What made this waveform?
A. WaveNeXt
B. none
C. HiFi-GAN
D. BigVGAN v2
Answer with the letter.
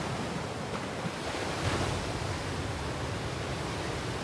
B